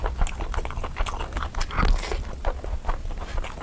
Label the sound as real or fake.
real